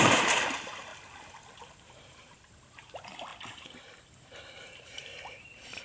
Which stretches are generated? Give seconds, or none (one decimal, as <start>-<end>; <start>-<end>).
0.0-0.9; 1.6-5.8